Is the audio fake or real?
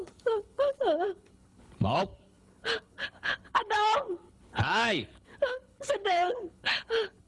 fake